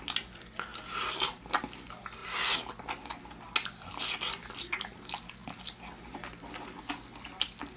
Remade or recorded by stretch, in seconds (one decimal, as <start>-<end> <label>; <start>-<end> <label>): 0.0-7.8 recorded